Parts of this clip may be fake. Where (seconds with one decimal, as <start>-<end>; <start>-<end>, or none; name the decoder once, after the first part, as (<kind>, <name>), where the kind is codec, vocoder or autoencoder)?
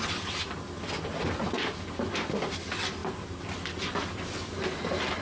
none